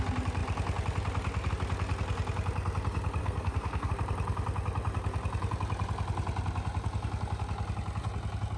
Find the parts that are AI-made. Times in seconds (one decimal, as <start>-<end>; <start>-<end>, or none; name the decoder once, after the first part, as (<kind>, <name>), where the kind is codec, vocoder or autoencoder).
3.2-3.9 (codec, SNAC)